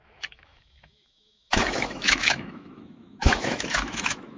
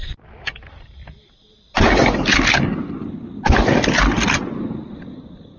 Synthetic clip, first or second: first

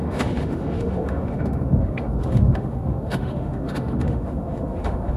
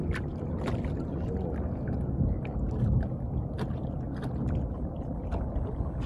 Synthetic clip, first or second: first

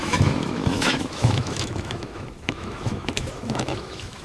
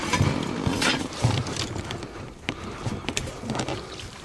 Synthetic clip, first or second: first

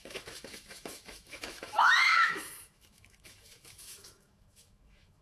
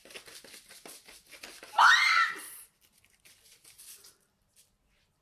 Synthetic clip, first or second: first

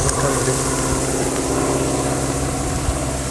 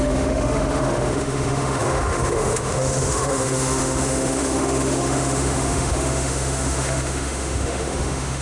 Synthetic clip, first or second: second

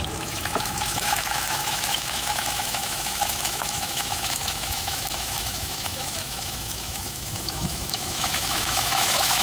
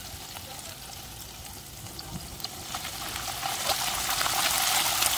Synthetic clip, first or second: first